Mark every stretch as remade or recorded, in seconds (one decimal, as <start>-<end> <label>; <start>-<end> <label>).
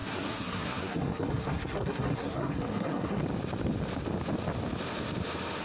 0.0-3.2 remade; 3.2-5.6 recorded